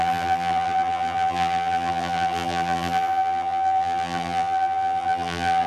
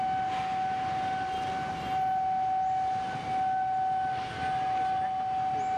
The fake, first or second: first